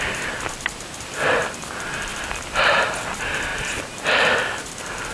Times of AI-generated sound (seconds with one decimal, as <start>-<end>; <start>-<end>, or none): none